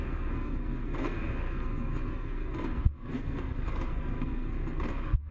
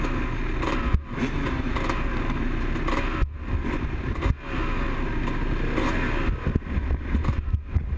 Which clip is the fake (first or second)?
first